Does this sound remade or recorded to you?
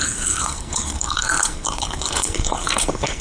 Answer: remade